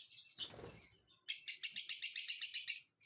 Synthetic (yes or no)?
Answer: no